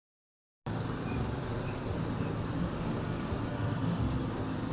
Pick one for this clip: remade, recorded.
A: recorded